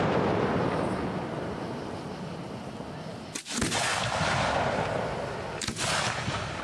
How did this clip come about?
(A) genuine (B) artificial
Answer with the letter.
A